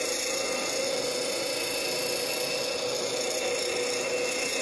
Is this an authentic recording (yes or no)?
yes